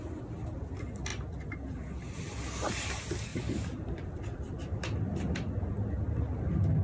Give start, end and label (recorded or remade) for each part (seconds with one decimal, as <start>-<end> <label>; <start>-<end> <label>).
0.0-3.3 recorded; 3.3-5.5 remade; 5.5-6.8 recorded